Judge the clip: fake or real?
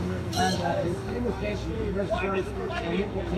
fake